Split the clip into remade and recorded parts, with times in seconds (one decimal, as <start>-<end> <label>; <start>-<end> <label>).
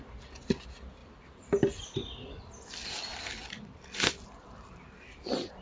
0.0-1.0 recorded; 1.0-1.8 remade; 1.8-3.1 recorded; 3.1-5.6 remade